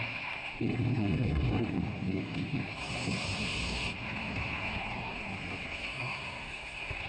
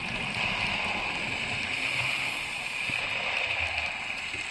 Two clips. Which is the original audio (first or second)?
second